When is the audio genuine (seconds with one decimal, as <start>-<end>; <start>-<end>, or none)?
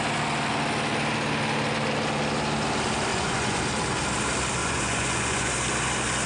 0.0-3.1; 3.6-4.6; 5.5-6.3